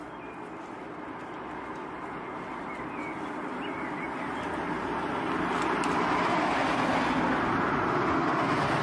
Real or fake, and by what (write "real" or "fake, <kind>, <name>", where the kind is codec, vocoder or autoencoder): real